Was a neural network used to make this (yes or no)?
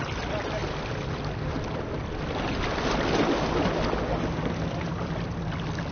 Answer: no